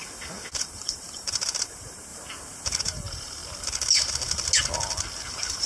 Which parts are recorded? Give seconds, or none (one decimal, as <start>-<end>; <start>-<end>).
0.0-0.6; 2.1-2.8; 3.4-5.3